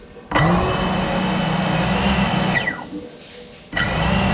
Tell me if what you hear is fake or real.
real